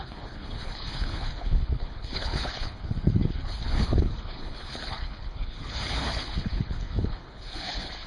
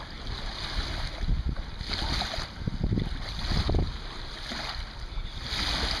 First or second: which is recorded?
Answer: second